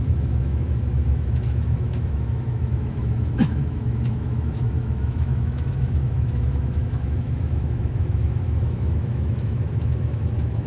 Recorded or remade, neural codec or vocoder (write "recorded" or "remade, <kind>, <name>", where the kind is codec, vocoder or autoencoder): remade, autoencoder, DAC-VAE